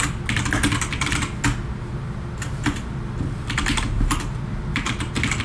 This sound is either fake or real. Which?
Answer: real